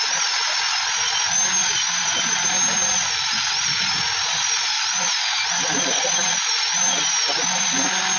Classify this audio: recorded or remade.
recorded